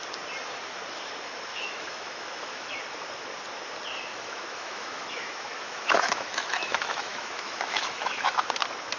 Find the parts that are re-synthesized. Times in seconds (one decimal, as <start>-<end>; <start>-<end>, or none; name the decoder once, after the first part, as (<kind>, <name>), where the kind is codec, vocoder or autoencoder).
1.5-2.8 (autoencoder, DAC-VAE); 4.1-8.4